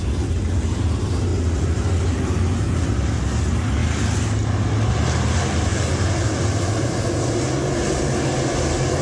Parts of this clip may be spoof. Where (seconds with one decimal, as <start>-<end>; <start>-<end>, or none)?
none